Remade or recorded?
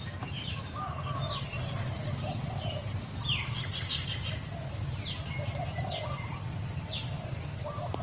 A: recorded